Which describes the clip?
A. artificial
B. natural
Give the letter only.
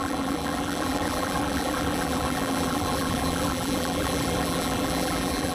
A